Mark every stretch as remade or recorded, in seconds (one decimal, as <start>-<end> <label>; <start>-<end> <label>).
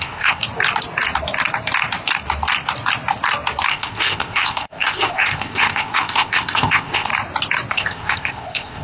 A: 0.0-0.4 remade; 0.4-3.7 recorded; 3.7-7.1 remade; 7.1-7.7 recorded; 7.7-8.8 remade